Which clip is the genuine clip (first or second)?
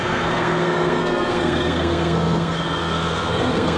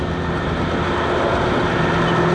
second